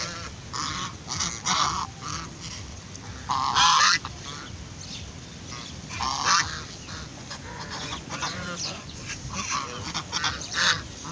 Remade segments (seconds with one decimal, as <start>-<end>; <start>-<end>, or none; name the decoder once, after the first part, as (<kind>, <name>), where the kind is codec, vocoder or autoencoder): 7.1-9.1 (vocoder, Vocos)